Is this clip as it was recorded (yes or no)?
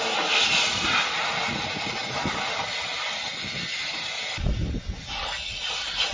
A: yes